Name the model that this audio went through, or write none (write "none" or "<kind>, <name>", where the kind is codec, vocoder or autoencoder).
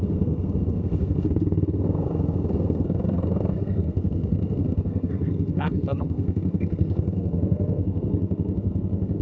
codec, SNAC